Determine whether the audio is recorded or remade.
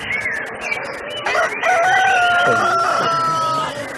recorded